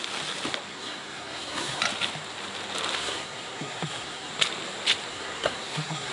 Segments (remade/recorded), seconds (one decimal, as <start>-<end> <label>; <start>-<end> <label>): 0.0-0.7 recorded; 0.7-1.8 remade; 1.8-3.0 recorded; 3.0-4.3 remade; 4.3-5.1 recorded; 5.1-6.1 remade